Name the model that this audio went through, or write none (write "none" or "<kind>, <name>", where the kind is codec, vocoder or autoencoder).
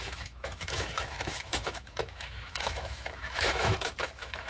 autoencoder, DAC-VAE